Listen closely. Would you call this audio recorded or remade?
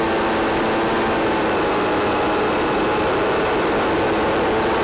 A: recorded